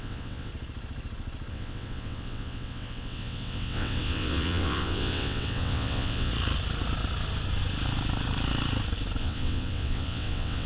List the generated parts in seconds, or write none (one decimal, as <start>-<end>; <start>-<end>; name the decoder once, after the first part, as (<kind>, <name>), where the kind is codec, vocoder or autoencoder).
0.0-0.5 (vocoder, WaveNeXt); 1.5-6.3; 9.2-10.7